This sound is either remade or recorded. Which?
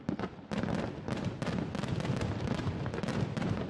recorded